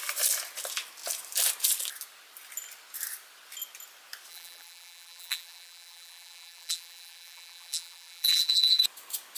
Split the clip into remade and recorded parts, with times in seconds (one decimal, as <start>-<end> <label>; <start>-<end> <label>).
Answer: 0.0-4.3 recorded; 4.3-8.8 remade; 8.8-9.4 recorded